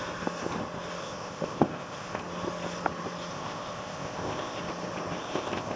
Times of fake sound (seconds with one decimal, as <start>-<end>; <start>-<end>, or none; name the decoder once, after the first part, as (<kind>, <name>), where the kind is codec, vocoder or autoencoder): 1.0-2.2 (codec, ZipCodec); 3.3-4.6; 5.2-5.8